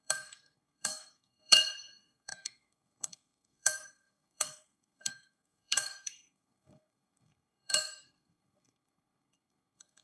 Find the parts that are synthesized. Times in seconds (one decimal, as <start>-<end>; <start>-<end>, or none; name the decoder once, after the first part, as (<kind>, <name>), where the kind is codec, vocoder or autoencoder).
0.0-10.0 (codec, SNAC)